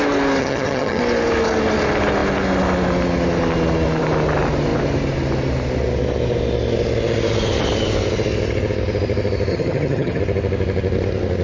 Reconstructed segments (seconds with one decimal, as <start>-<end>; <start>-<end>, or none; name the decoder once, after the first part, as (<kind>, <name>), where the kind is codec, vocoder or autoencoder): 0.4-1.0 (vocoder, HiFi-GAN); 9.5-10.2